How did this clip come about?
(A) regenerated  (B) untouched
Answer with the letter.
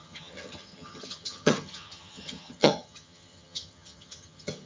A